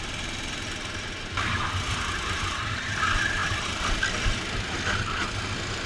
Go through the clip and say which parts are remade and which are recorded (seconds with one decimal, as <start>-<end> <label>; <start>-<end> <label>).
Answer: 0.0-5.9 recorded